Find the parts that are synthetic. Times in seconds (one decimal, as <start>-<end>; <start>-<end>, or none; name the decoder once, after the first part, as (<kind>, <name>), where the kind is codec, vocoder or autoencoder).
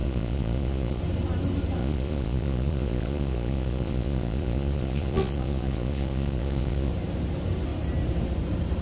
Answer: 0.0-1.0 (vocoder, Vocos); 1.8-6.9